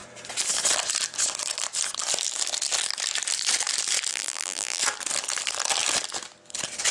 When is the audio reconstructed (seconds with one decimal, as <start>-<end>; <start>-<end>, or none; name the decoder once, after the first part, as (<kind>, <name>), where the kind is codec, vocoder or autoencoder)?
4.1-4.8 (vocoder, BigVGAN v2)